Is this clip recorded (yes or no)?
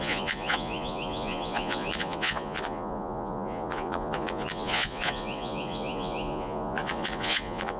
no